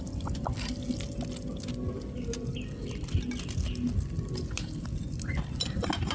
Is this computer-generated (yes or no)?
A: no